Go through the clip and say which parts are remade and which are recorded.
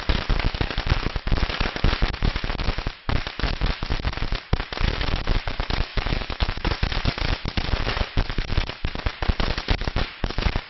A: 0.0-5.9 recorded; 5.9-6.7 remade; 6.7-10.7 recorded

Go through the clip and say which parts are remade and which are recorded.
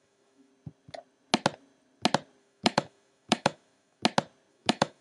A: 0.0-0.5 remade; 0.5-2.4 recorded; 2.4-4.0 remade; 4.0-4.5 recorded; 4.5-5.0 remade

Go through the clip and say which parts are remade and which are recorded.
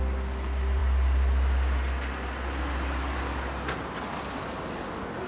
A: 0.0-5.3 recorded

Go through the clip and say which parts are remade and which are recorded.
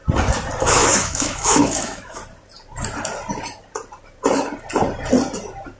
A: 0.0-0.6 recorded; 0.6-2.2 remade; 2.2-5.8 recorded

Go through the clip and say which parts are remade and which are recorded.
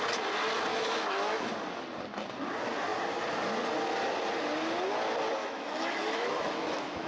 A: 0.0-0.7 recorded; 0.7-1.5 remade; 1.5-5.4 recorded; 5.4-7.1 remade